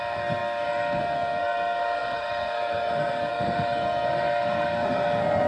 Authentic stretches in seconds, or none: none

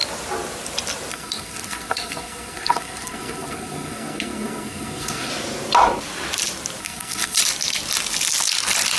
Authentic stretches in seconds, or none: 0.0-1.1; 5.3-6.8; 7.4-9.0